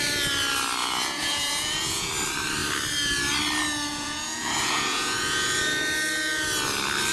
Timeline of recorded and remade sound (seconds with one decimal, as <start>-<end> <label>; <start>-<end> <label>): 0.0-0.8 recorded; 0.8-2.1 remade; 2.1-3.9 recorded; 3.9-5.6 remade; 5.6-7.1 recorded